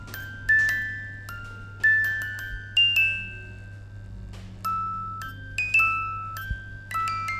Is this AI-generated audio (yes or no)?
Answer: no